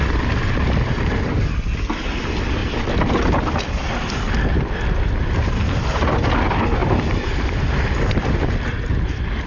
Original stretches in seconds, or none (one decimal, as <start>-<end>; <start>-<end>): 0.0-9.5

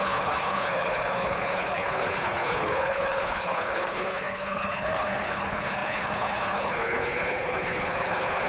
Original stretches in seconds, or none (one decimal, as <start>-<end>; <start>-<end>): none